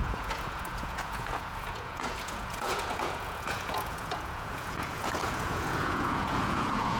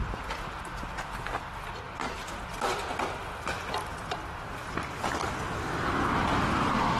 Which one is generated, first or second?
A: first